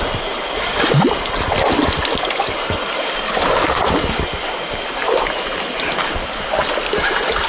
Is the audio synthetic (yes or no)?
no